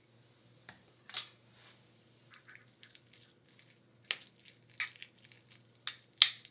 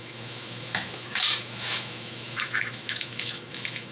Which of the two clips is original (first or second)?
first